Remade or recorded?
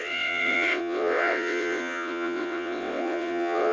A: remade